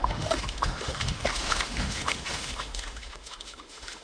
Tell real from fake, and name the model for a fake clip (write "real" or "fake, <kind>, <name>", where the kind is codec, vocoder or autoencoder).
fake, autoencoder, DAC-VAE